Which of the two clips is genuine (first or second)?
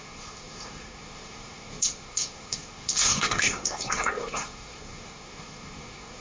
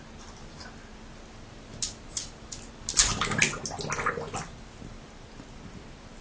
second